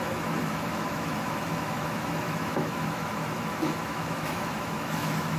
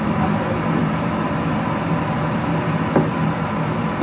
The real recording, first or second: second